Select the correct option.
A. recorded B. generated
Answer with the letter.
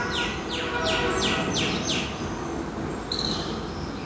A